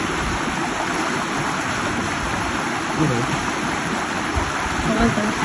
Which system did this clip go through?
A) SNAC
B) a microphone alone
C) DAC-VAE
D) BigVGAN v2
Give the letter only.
B